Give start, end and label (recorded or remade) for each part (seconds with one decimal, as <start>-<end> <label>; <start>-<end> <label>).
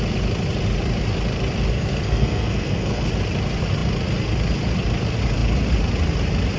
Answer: 0.0-1.7 recorded; 1.7-3.1 remade; 3.1-6.6 recorded